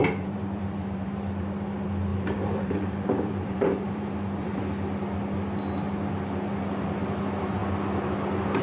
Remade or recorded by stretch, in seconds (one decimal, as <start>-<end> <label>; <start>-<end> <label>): 0.0-1.1 remade; 1.1-2.1 recorded; 2.1-4.6 remade; 4.6-8.6 recorded